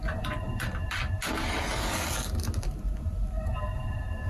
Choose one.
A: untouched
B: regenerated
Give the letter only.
A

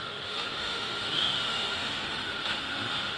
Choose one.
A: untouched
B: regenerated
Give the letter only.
B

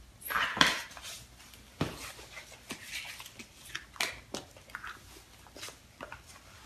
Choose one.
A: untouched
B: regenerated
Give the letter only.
A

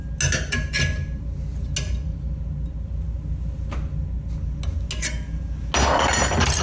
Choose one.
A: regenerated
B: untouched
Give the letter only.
B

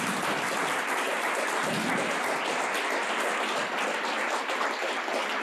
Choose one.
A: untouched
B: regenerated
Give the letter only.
A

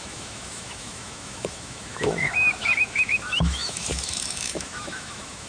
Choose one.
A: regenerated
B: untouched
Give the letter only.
A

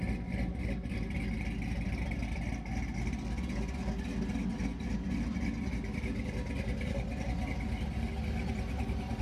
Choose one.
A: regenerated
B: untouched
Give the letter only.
B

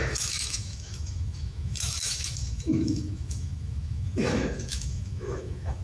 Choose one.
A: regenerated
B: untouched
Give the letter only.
A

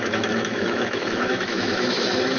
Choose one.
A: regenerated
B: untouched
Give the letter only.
A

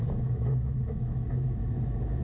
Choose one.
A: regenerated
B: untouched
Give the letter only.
A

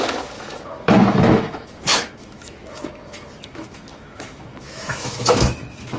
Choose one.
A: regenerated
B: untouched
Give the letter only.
A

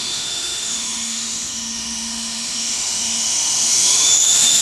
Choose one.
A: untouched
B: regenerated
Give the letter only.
B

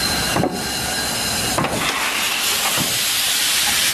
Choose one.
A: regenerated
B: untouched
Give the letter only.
B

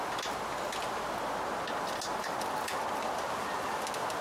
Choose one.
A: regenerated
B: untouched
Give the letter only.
B